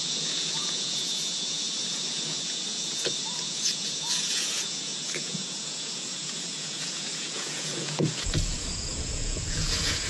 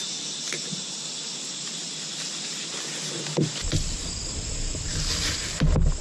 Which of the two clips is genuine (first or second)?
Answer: second